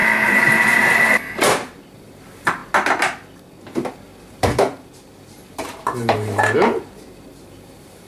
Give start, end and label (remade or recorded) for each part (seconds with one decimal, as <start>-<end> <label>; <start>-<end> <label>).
0.0-1.3 recorded; 1.3-2.6 remade; 2.6-4.3 recorded; 4.3-8.1 remade